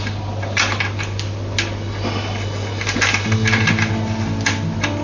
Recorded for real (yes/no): yes